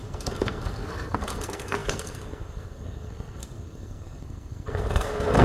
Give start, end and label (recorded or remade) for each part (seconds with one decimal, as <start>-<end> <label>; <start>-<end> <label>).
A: 0.0-5.4 remade